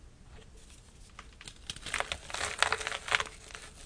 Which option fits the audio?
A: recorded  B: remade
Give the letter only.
A